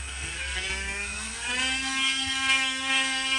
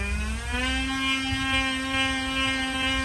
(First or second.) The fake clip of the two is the first